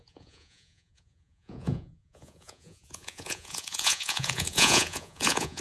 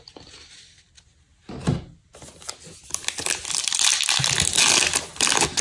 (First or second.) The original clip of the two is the second